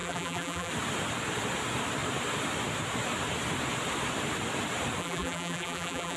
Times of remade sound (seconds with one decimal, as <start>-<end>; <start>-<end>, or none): 0.0-0.7; 5.0-6.2

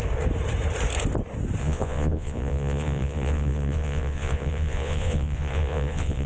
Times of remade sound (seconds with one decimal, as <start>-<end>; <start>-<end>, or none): 1.6-6.3